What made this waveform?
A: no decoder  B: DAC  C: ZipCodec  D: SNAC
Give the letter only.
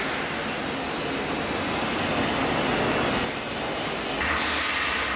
A